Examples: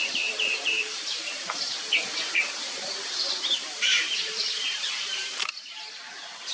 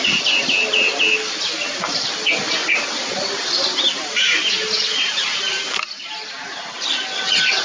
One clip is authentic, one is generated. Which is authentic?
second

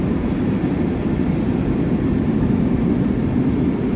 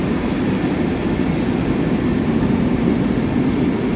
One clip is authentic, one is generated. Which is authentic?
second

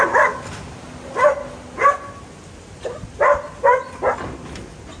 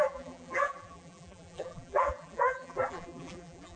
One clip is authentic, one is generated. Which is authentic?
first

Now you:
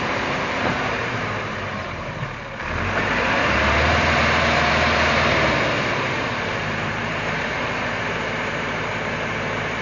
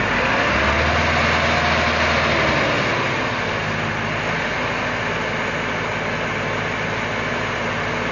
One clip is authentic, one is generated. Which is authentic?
second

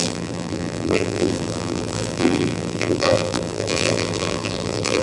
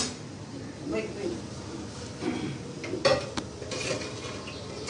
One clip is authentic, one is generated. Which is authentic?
second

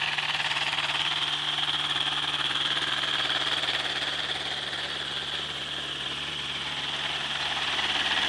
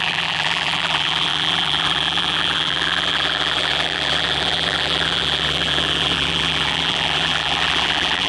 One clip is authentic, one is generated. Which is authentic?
first